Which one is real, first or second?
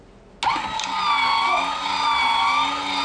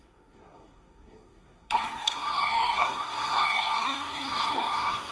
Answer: first